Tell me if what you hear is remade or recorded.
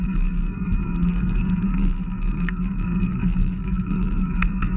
remade